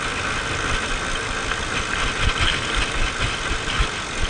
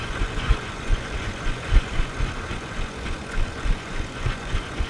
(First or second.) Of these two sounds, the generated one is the second